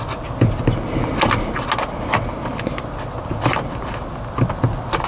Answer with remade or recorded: recorded